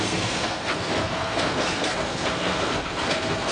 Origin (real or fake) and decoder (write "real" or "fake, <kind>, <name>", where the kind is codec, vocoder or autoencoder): fake, codec, SNAC